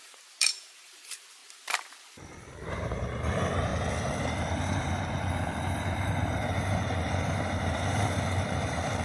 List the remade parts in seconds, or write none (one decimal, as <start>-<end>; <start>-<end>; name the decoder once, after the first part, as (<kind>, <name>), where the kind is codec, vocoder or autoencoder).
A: 0.0-1.4 (vocoder, BigVGAN v2); 2.7-9.0